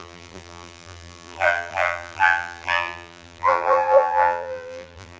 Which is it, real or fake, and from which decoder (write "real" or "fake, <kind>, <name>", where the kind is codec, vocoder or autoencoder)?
fake, vocoder, BigVGAN v2